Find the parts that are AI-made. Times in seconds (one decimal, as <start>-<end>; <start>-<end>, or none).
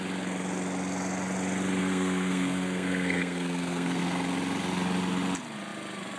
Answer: 1.8-4.0